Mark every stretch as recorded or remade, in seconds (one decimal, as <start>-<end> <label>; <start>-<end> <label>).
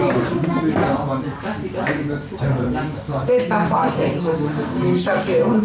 0.0-3.1 recorded; 3.1-5.6 remade